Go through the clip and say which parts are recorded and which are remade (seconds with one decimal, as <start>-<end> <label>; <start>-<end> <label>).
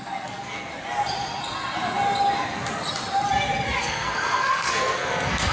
0.0-0.7 remade; 0.7-3.8 recorded; 3.8-5.5 remade